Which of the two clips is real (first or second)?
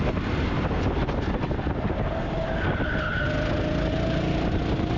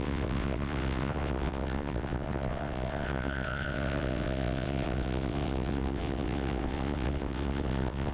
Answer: first